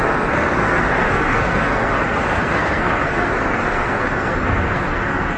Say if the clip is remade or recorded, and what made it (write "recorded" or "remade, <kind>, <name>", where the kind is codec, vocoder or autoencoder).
remade, codec, SNAC